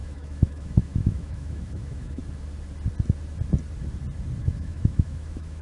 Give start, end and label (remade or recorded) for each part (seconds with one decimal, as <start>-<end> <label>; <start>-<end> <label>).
0.0-2.2 remade; 2.2-4.4 recorded; 4.4-5.6 remade